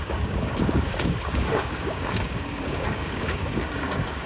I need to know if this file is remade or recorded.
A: remade